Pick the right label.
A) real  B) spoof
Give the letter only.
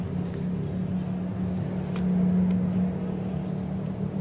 A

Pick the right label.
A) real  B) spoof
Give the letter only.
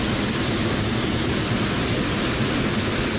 A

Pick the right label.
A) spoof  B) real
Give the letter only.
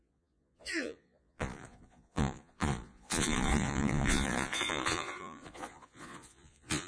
A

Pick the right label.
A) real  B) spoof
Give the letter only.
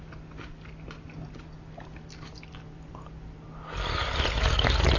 A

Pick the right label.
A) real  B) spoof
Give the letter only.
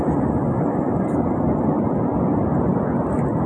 A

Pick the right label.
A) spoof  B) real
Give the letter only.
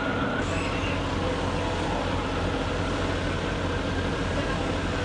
B